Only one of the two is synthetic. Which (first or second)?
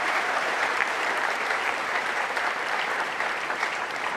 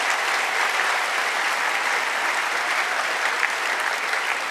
first